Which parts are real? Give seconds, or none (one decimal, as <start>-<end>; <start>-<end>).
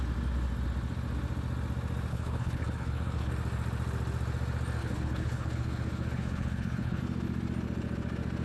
0.0-2.1; 3.3-4.8; 7.0-8.4